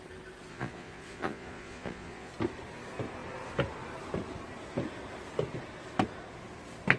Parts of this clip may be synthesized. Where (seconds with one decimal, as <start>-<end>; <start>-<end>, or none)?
0.5-2.3

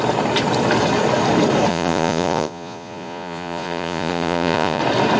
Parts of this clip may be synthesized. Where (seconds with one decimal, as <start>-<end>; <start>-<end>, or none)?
1.7-4.8